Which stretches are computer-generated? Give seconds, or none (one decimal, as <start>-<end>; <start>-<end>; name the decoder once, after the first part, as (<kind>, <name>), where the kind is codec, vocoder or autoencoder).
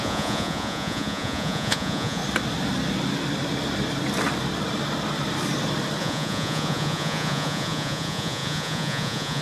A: 0.0-2.2 (vocoder, Vocos); 6.0-9.4